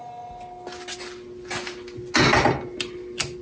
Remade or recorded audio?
recorded